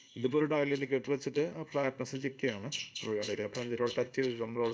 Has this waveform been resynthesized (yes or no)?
yes